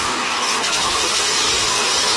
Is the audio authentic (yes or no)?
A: no